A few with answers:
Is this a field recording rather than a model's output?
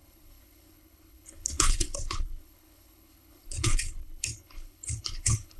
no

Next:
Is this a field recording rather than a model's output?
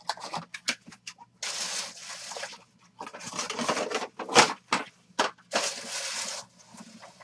yes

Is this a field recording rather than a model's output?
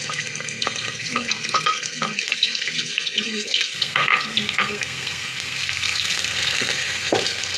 no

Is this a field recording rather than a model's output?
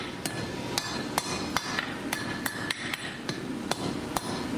yes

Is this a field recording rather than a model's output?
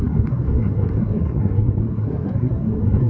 no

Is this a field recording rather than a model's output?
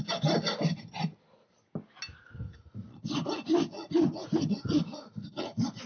yes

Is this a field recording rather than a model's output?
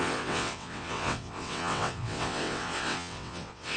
no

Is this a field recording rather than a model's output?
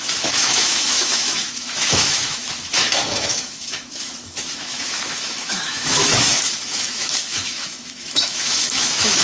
no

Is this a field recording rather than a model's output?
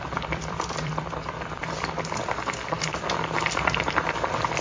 no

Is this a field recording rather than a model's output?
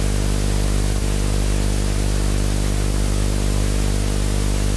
yes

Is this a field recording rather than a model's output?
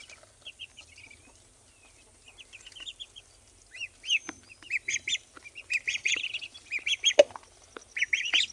yes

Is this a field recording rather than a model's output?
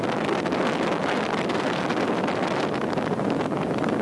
yes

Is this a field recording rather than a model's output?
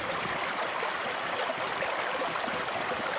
yes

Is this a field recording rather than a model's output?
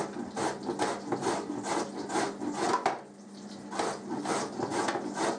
yes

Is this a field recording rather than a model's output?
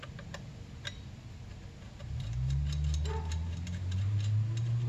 yes